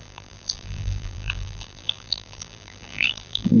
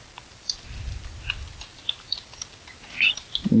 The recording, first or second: second